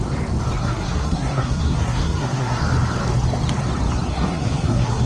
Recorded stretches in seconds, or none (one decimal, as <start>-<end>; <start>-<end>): 0.0-0.6; 2.6-4.1